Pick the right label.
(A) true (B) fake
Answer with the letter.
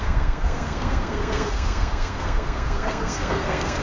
B